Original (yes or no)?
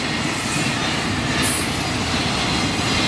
yes